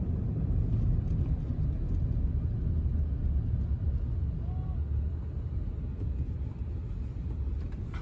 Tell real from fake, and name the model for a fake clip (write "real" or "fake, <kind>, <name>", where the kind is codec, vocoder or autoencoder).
real